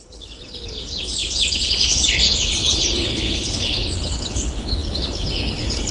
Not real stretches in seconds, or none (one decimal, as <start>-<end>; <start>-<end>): 0.0-5.9

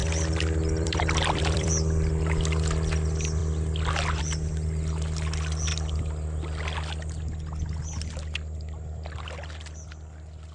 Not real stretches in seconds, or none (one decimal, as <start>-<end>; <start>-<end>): 0.0-1.7; 3.4-4.2